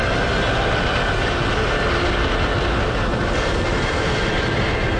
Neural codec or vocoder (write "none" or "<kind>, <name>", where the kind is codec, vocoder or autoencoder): none